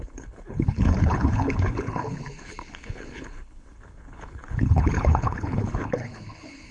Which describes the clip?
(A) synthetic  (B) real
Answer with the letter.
A